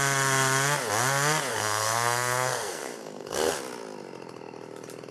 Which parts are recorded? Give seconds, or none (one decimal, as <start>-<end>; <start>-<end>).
0.0-1.5; 3.5-5.1